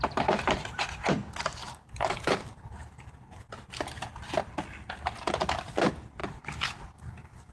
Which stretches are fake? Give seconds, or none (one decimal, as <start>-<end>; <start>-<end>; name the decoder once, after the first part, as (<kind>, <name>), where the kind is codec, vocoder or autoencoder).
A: 1.6-3.5 (codec, DAC); 6.2-7.5